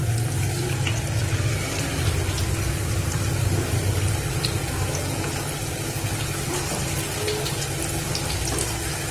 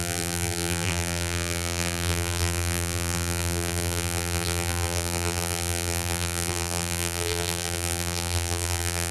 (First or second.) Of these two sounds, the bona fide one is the first